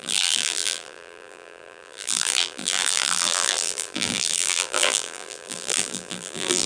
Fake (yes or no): yes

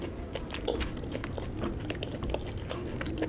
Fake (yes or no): no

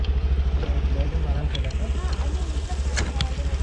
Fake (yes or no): no